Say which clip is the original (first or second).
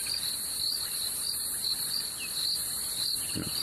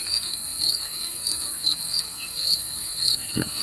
first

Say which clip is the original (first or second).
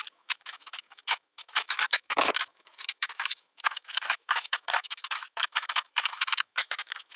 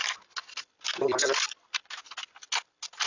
second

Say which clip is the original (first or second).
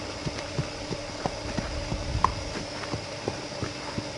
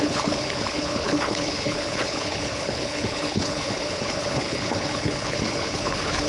first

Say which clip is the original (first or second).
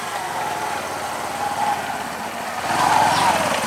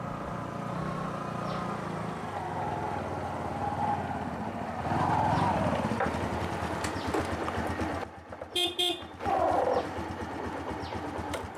first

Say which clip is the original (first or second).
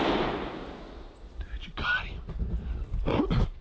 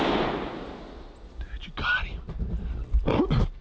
second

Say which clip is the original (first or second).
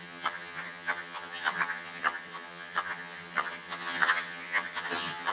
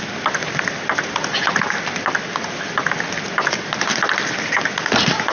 second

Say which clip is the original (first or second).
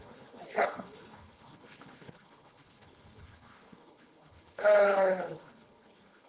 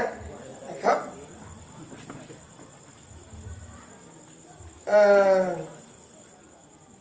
second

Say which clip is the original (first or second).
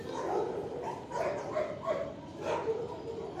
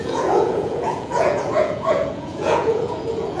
first